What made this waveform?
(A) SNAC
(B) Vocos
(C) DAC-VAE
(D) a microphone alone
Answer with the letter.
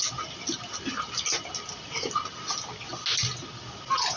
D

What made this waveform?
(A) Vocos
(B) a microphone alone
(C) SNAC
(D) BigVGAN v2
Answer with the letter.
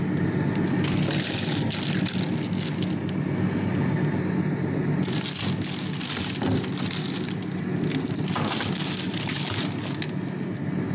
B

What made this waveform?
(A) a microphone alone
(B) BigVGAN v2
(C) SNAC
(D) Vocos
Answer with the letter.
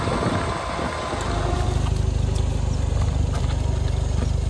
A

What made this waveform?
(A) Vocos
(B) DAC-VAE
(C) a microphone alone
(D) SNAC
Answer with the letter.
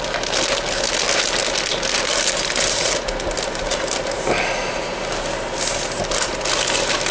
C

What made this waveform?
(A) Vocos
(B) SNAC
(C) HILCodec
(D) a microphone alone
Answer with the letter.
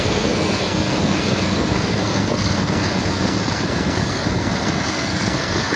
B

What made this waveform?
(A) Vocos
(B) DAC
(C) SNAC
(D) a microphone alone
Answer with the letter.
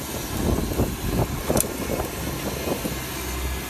D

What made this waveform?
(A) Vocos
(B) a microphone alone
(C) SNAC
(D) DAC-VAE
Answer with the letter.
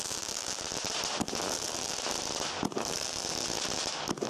B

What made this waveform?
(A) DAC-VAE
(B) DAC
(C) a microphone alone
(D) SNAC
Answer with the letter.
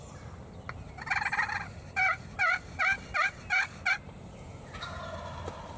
C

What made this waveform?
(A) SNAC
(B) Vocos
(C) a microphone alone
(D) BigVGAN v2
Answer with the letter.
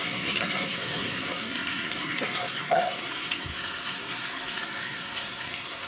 A